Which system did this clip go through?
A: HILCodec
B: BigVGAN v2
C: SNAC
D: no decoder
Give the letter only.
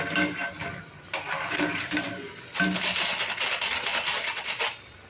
D